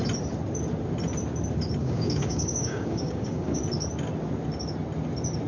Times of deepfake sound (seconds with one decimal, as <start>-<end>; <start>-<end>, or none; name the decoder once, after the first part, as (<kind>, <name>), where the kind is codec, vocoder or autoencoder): 1.8-3.6 (codec, DAC)